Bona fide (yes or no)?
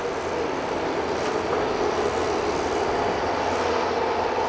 yes